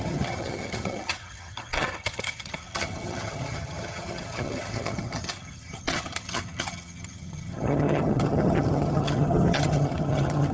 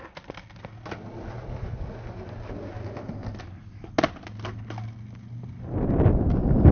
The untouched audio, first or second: second